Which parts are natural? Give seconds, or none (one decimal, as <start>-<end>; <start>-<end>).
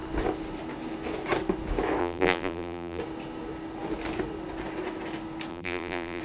0.0-2.0; 3.0-5.5